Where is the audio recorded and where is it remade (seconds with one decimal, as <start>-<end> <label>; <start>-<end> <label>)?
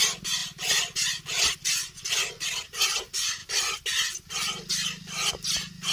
0.0-5.9 recorded